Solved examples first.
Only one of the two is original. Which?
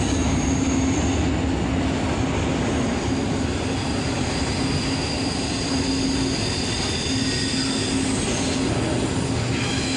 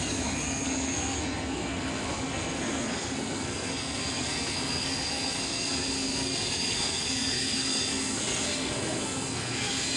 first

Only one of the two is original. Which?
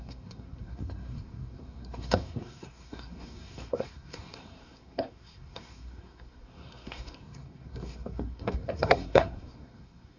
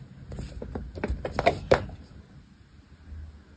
second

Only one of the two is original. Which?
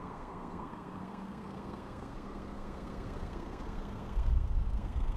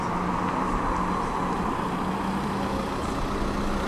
second